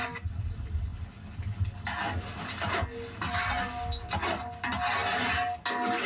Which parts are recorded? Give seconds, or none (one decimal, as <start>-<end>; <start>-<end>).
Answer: 0.0-6.1